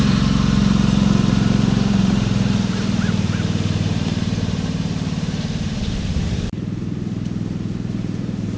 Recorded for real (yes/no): no